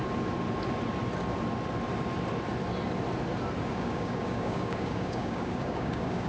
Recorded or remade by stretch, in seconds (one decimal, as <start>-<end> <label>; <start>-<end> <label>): 0.0-3.6 recorded; 3.6-6.3 remade